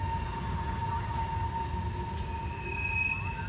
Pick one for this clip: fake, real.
real